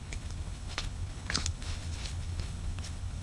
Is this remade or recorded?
remade